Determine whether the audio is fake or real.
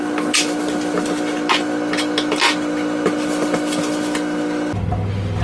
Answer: real